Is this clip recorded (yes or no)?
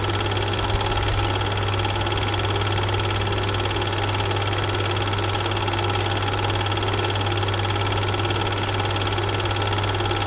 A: yes